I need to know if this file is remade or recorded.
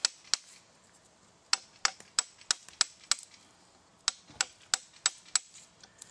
recorded